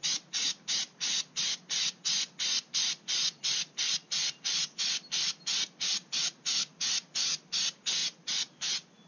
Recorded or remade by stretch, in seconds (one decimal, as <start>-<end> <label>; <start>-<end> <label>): 0.0-9.1 recorded